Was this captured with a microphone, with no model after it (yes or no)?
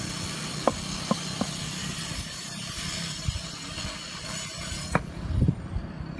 yes